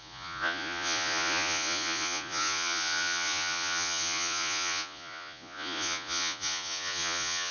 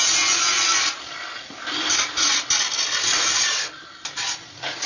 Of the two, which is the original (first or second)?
second